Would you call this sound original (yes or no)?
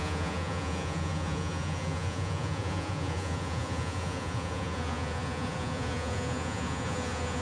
no